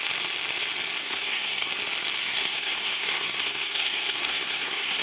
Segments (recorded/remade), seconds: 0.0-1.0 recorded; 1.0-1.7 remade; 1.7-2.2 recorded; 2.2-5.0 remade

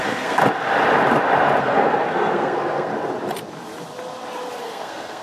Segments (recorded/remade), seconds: 0.0-0.4 remade; 0.4-1.6 recorded; 1.6-2.9 remade; 2.9-4.6 recorded; 4.6-5.2 remade

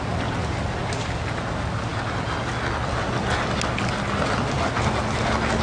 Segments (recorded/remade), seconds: 0.0-5.6 recorded

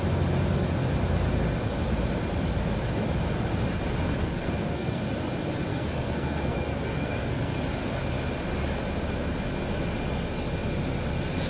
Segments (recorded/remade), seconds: 0.0-4.2 recorded; 4.2-5.0 remade; 5.0-5.7 recorded; 5.7-7.6 remade; 7.6-11.5 recorded

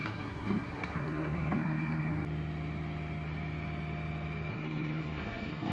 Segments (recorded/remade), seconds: 0.0-2.1 remade; 2.1-4.5 recorded; 4.5-5.7 remade

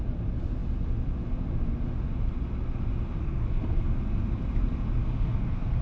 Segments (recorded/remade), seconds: 0.0-3.2 recorded; 3.2-3.9 remade; 3.9-5.0 recorded; 5.0-5.8 remade

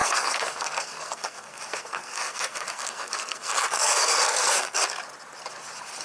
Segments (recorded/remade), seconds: 0.0-4.8 remade; 4.8-6.0 recorded

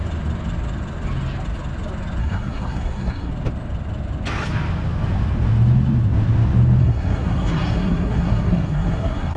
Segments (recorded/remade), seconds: 0.0-2.2 recorded; 2.2-3.3 remade; 3.3-6.8 recorded; 6.8-9.4 remade